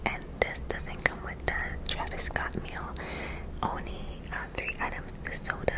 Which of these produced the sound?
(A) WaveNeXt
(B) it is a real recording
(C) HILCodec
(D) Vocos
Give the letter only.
B